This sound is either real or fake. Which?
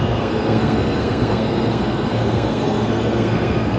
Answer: fake